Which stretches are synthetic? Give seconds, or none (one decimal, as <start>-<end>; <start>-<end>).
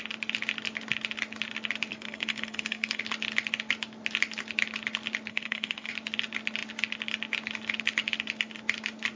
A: 1.9-3.0; 5.3-5.9